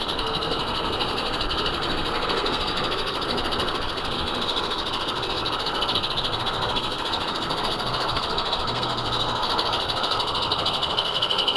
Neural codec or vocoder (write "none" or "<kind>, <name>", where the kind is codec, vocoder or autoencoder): codec, SNAC